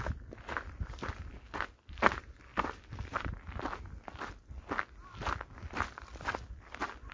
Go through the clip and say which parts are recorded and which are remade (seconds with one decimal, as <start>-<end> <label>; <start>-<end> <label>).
0.0-7.1 recorded